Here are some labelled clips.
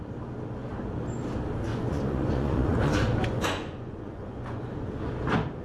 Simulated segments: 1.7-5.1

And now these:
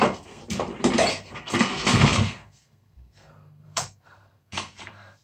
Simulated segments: 0.0-0.4; 1.1-5.2

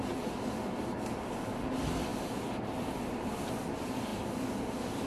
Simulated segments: 2.1-2.9

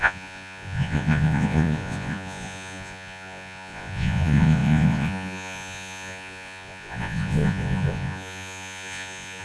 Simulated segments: 0.0-9.4

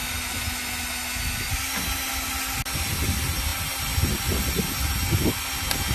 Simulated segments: 3.5-4.9

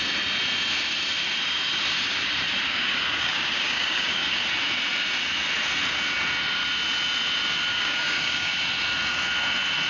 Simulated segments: 2.7-4.4; 7.7-8.5

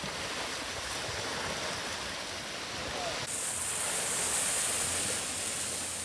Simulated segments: none